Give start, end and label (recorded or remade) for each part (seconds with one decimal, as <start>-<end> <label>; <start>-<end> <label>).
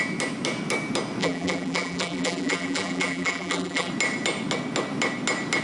0.0-1.2 recorded; 1.2-3.9 remade; 3.9-5.6 recorded